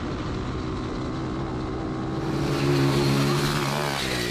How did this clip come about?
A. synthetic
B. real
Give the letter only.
B